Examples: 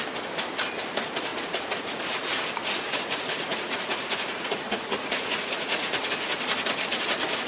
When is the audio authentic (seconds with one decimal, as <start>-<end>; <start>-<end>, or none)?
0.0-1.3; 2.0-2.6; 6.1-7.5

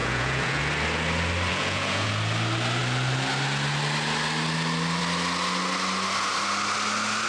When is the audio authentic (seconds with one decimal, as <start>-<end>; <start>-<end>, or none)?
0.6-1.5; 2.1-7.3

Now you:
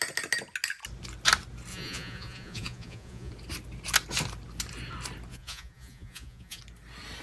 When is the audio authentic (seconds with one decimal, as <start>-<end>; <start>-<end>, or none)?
0.0-1.7; 3.3-5.3; 6.6-7.2

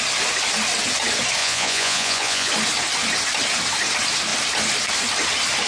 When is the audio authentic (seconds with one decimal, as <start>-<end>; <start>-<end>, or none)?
0.0-1.4; 2.5-5.7

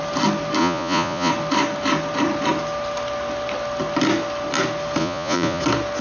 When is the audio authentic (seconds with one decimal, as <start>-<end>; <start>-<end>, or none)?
0.0-0.6; 1.3-5.0; 5.6-6.0

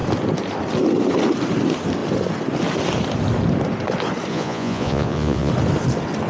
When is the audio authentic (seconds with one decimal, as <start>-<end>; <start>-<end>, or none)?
0.0-4.3; 5.5-6.3